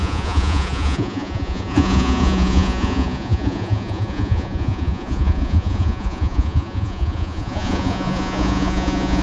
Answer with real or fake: fake